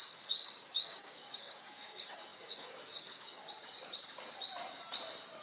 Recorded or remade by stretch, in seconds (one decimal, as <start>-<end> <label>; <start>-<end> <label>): 0.0-3.4 remade; 3.4-5.4 recorded